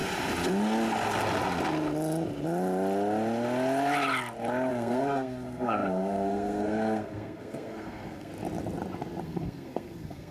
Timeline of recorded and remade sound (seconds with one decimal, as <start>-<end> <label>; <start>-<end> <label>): 0.0-4.7 recorded; 4.7-8.3 remade; 8.3-9.2 recorded; 9.2-10.3 remade